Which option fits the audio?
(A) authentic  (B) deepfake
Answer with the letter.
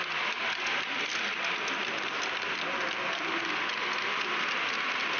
A